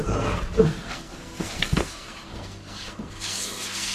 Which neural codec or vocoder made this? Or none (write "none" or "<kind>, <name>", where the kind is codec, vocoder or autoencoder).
codec, SNAC